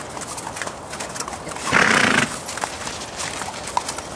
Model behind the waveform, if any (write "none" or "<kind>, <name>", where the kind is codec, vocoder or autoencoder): none